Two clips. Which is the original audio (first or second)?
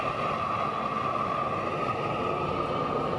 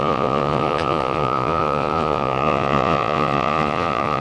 first